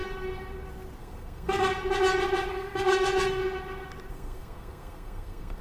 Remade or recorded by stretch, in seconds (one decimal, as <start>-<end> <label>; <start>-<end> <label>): 0.0-1.0 recorded; 1.0-1.7 remade; 1.7-2.5 recorded; 2.5-3.4 remade; 3.4-4.1 recorded; 4.1-5.6 remade